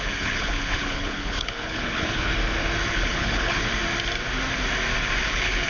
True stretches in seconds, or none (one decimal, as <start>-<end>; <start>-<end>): 2.3-2.9; 3.7-5.2